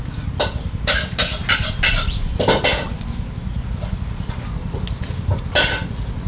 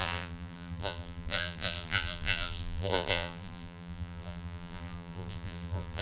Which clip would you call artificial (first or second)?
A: second